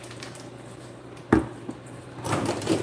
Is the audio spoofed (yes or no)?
yes